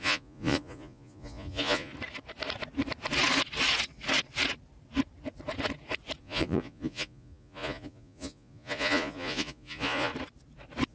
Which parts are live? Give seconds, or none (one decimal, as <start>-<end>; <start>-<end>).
1.9-6.2; 10.1-10.9